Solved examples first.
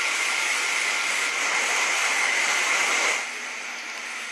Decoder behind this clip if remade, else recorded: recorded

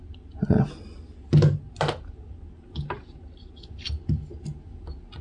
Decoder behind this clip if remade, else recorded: recorded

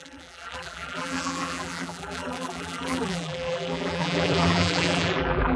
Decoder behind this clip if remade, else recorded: remade, vocoder, BigVGAN v2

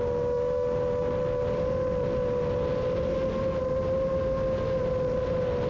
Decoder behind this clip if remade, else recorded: recorded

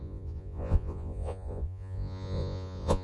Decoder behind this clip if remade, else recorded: remade, vocoder, Vocos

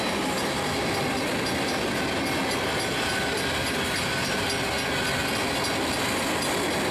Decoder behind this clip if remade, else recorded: recorded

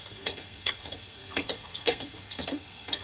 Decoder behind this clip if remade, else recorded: remade, codec, SNAC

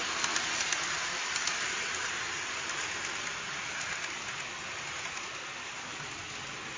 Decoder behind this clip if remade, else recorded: recorded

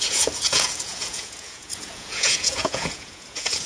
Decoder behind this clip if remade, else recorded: remade, vocoder, Vocos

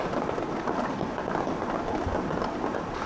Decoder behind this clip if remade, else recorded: recorded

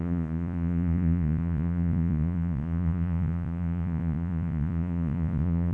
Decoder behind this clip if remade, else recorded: remade, vocoder, Vocos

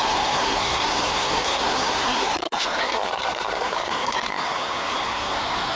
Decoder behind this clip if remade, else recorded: remade, codec, SNAC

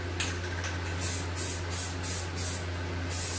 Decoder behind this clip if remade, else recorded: recorded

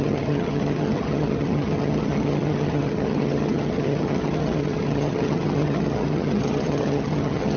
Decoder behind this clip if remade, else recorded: remade, vocoder, HiFi-GAN